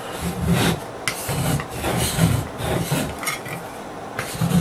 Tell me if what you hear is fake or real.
real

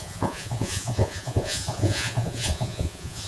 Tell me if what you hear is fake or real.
fake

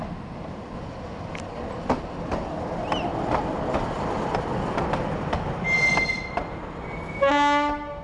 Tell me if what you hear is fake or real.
real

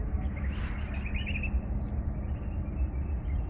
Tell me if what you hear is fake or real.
real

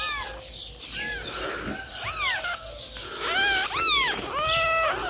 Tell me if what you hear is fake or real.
real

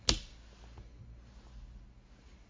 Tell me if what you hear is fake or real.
real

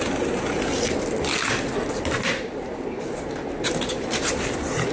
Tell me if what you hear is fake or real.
real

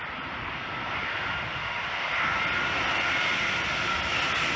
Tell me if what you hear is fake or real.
real